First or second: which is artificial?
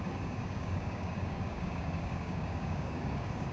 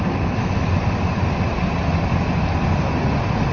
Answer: first